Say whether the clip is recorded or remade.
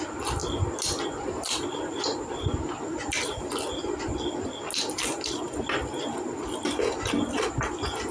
recorded